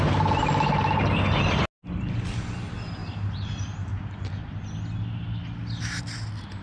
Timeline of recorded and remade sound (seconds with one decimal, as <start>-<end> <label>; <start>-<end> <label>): 0.0-3.0 recorded; 3.0-3.5 remade; 3.5-6.6 recorded